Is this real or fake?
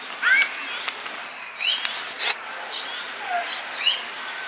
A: real